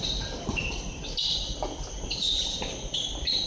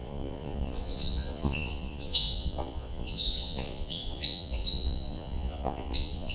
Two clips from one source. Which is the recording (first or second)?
first